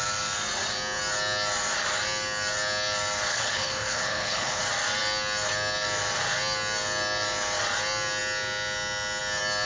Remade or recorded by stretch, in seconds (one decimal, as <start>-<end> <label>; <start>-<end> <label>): 0.0-3.3 recorded; 3.3-4.6 remade; 4.6-9.7 recorded